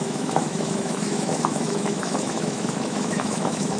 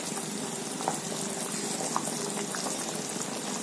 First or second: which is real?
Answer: second